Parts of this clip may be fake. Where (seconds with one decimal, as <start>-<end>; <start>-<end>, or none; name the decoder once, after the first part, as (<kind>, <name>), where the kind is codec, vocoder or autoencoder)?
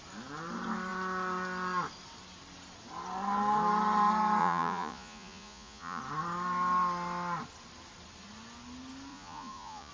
4.4-6.0 (vocoder, Vocos); 9.1-9.9